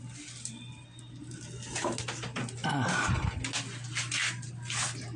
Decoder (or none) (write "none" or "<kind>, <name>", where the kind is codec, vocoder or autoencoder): none